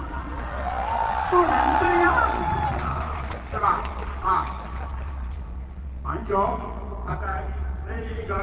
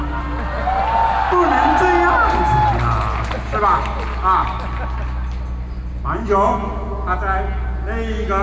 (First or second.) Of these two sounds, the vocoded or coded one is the first